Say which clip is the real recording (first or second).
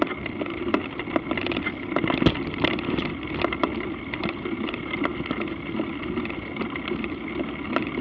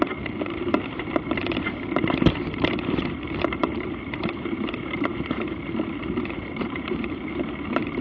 first